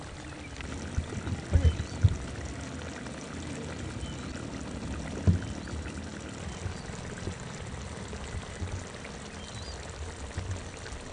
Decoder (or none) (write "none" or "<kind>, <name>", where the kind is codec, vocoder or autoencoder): none